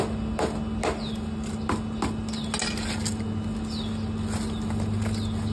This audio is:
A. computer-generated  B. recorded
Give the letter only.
B